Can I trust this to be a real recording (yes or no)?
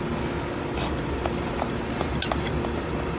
yes